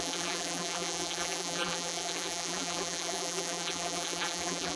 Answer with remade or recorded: remade